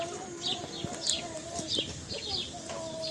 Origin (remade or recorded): recorded